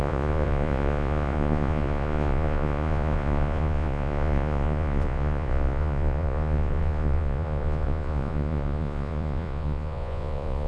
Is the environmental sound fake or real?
fake